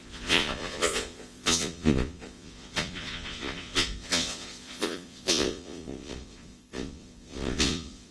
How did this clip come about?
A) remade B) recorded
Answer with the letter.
A